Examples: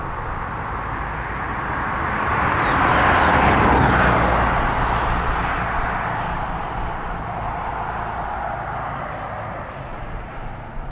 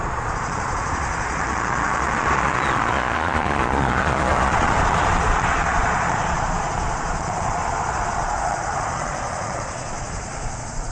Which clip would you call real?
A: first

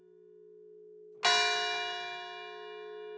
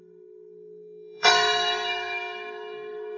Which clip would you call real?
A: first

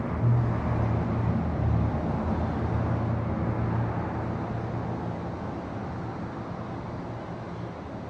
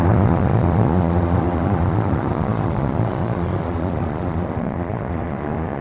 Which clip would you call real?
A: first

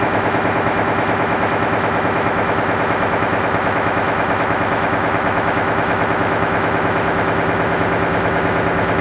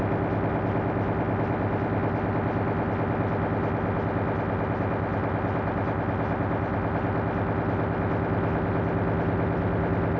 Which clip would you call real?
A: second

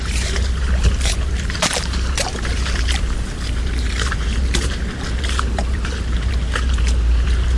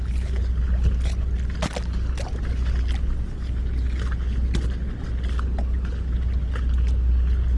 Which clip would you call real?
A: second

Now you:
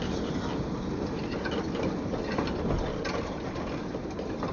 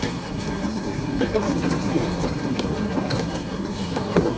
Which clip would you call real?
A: first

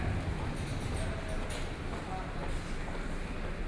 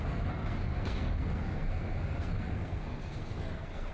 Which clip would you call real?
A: first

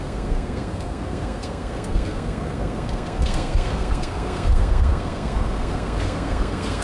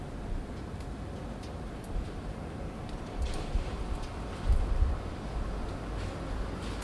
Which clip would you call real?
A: second